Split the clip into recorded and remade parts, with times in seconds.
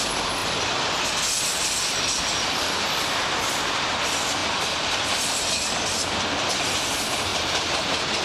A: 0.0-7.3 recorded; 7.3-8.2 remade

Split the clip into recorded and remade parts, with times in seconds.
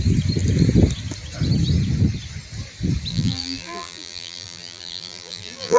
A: 0.0-3.1 recorded; 3.1-5.8 remade